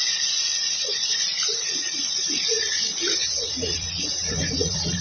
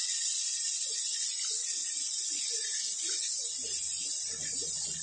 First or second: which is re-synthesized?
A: first